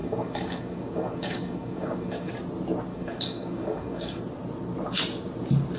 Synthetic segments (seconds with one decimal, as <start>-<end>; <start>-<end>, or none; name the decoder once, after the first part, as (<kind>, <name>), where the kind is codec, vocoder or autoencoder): 0.0-2.3 (codec, DAC); 2.9-4.2